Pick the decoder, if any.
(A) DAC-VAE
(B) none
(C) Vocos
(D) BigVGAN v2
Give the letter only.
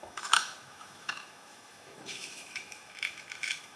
A